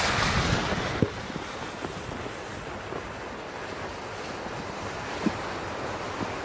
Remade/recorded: recorded